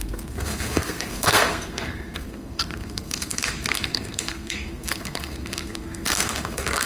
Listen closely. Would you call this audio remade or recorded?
remade